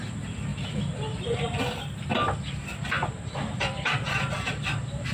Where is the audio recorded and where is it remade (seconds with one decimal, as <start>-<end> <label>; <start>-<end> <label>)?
0.0-0.5 recorded; 0.5-1.6 remade; 1.6-3.0 recorded; 3.0-5.1 remade